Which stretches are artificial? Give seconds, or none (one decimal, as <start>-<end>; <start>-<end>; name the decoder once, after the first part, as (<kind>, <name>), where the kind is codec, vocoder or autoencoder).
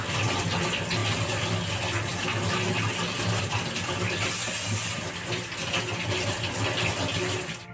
none